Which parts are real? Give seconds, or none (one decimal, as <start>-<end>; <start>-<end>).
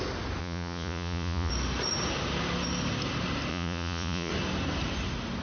0.0-0.4; 1.5-3.5; 4.3-5.4